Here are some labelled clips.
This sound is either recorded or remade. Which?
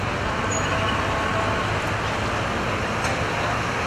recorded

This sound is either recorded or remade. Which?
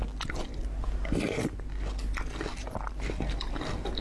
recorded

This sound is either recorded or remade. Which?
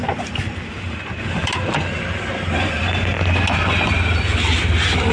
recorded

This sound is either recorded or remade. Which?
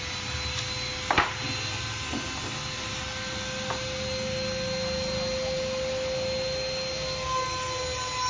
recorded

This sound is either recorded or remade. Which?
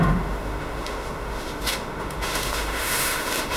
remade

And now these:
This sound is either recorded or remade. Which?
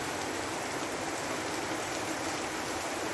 remade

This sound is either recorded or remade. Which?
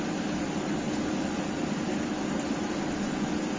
recorded